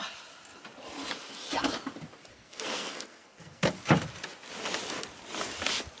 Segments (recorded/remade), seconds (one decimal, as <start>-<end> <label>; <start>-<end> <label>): 0.0-2.3 recorded; 2.3-3.7 remade; 3.7-6.0 recorded